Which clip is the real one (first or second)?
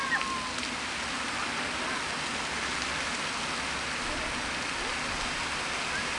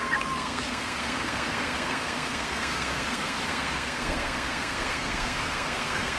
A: first